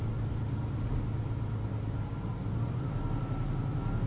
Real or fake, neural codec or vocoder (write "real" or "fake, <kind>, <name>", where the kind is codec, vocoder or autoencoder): real